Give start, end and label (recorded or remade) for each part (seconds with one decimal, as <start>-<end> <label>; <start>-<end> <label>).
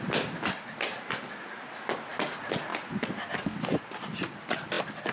0.0-5.1 recorded